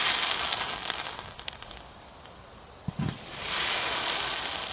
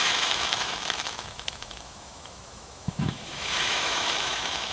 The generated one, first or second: second